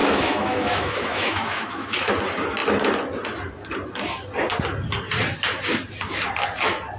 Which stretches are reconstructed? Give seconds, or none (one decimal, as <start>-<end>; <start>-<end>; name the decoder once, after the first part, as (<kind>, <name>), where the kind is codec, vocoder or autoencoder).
0.0-2.1 (autoencoder, DAC-VAE)